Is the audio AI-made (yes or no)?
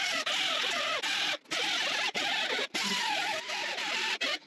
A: no